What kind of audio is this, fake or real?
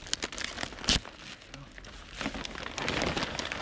real